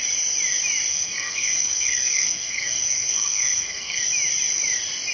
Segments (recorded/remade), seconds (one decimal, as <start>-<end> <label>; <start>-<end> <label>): 0.0-0.9 recorded; 0.9-4.0 remade; 4.0-5.1 recorded